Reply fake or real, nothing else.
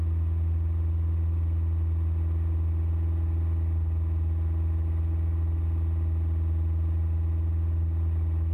real